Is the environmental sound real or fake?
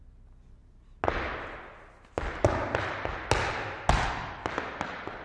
real